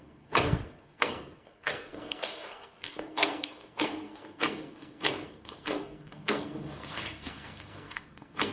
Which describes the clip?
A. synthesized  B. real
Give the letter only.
A